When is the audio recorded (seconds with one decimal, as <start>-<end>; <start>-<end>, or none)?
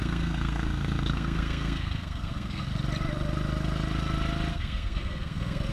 2.7-4.5